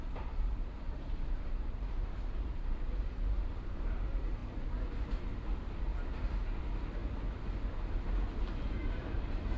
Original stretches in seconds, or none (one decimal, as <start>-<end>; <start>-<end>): 5.9-6.6; 7.0-9.0